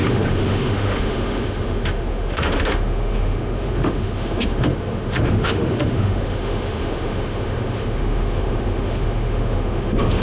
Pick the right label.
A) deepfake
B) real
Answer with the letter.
A